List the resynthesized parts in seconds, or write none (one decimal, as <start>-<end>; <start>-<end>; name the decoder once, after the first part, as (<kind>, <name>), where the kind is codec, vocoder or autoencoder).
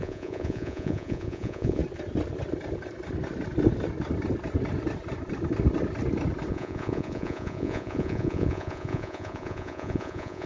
0.0-1.8 (vocoder, Vocos); 6.5-10.5